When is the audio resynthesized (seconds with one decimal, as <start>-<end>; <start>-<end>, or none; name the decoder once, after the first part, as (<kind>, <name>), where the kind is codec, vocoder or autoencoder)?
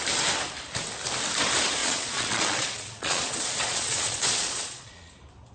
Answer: 1.8-5.1 (vocoder, Vocos)